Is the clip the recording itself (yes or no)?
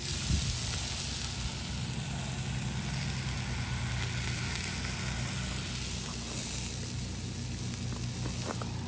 yes